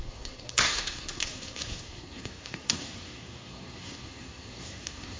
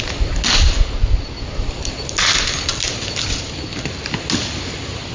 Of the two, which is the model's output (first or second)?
first